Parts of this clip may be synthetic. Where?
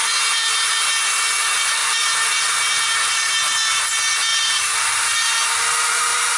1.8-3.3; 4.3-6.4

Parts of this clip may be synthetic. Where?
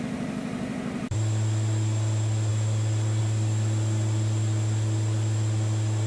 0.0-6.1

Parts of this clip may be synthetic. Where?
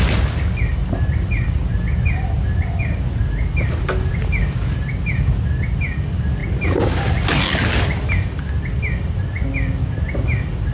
none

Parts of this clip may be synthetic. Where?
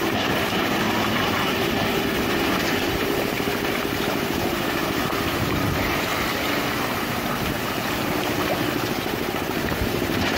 0.0-6.1; 9.3-10.4